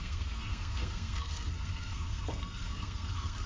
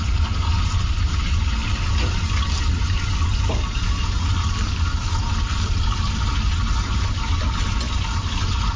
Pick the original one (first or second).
second